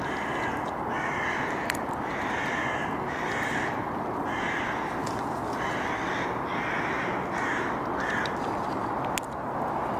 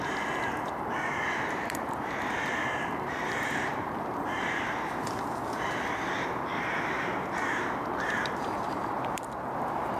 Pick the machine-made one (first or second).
second